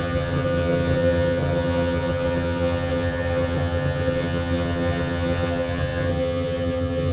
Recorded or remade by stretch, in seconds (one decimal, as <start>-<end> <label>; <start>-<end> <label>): 0.0-7.1 remade